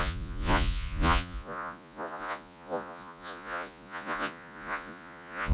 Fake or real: fake